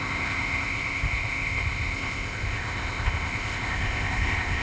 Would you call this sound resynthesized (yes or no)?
yes